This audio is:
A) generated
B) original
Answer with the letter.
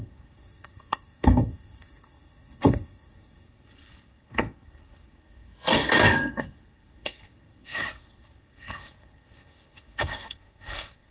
A